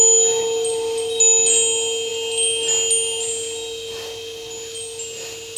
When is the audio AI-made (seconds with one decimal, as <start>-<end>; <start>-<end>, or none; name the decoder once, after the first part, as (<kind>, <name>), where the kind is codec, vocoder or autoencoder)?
none